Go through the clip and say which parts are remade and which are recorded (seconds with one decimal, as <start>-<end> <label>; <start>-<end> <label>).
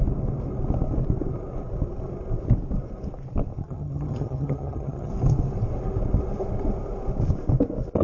0.0-3.6 recorded; 3.6-5.1 remade; 5.1-8.0 recorded